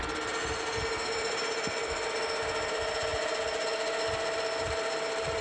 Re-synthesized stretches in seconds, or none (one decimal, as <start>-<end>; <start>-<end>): none